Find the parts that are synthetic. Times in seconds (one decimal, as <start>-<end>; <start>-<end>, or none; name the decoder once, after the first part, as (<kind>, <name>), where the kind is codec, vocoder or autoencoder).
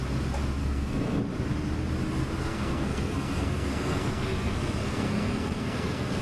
0.6-1.2 (codec, SNAC); 2.4-6.2